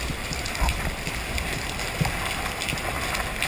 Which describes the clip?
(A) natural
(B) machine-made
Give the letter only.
A